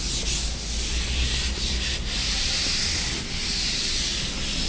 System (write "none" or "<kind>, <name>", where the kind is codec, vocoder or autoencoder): none